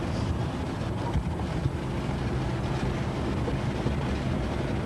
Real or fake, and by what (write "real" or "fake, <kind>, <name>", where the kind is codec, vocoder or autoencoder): real